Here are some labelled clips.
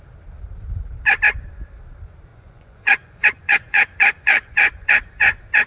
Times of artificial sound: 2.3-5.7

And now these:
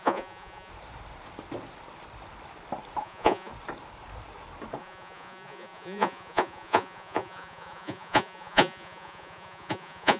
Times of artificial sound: 0.0-0.7; 3.0-3.5; 4.8-10.2

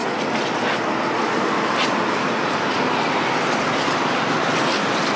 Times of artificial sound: none

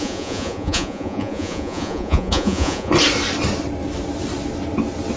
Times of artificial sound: 0.0-2.9

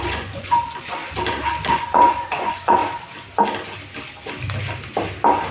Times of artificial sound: 0.0-1.0; 1.7-2.8

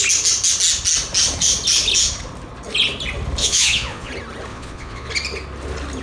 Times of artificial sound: 3.4-4.1; 4.5-5.1